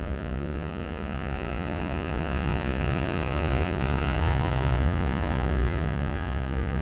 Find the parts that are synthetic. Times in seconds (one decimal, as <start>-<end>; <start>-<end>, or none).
0.0-6.8